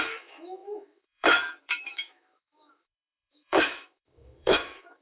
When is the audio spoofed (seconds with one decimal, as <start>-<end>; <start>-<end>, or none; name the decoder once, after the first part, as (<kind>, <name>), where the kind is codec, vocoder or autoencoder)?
0.0-5.0 (autoencoder, DAC-VAE)